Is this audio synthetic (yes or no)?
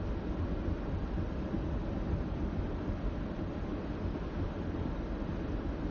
no